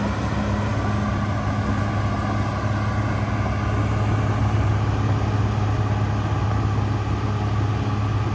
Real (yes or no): yes